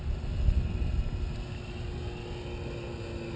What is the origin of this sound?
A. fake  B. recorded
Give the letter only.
B